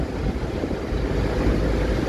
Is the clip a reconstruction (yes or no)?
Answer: no